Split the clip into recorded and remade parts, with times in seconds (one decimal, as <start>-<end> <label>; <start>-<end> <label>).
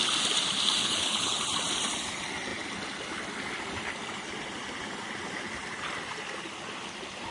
0.0-0.8 recorded; 0.8-1.4 remade; 1.4-7.3 recorded